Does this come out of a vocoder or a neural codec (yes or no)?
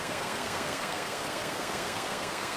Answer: yes